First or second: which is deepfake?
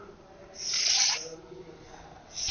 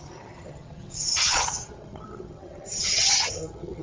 second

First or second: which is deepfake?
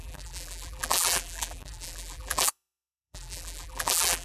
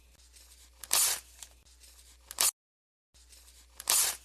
first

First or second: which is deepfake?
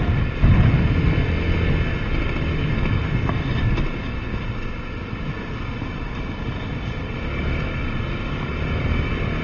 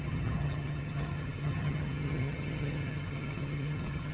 second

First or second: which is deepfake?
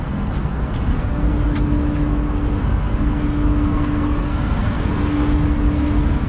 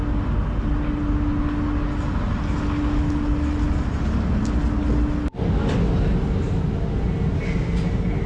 first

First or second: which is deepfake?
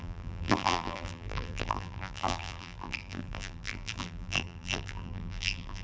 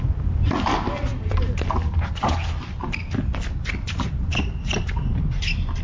first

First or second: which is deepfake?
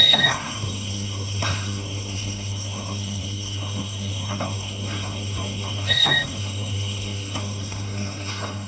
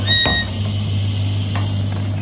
first